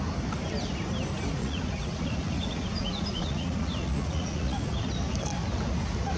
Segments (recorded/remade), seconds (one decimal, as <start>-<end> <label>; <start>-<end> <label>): 0.0-1.4 recorded; 1.4-4.9 remade; 4.9-6.2 recorded

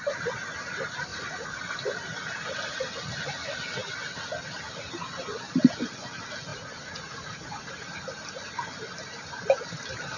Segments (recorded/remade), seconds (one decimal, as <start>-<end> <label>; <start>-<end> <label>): 0.0-1.1 recorded; 1.1-1.6 remade; 1.6-6.5 recorded; 6.5-7.7 remade; 7.7-10.2 recorded